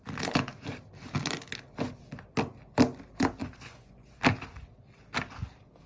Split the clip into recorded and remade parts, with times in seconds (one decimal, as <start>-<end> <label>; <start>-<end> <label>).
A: 0.0-3.4 recorded; 3.4-4.2 remade; 4.2-5.9 recorded